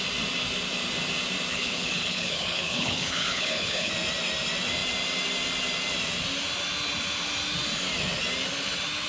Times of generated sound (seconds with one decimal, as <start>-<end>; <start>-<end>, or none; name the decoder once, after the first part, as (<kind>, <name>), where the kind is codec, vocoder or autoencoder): 1.5-3.9 (codec, HILCodec)